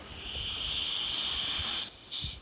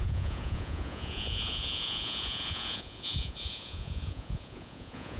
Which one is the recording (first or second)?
first